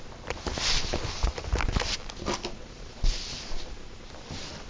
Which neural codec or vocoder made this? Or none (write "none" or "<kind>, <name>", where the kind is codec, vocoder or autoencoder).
none